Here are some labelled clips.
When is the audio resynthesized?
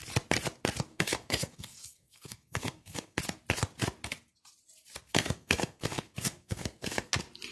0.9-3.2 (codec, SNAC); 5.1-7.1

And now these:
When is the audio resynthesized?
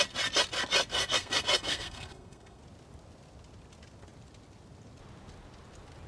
0.9-2.6 (codec, SNAC)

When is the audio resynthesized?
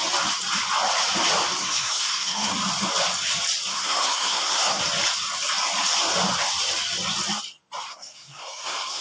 1.6-2.5 (codec, SNAC); 3.7-4.8; 7.9-9.0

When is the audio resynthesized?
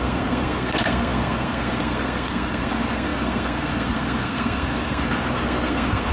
0.0-6.1 (codec, SNAC)